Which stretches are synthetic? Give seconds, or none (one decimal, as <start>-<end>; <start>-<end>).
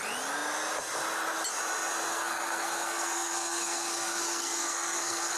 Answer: 2.1-5.4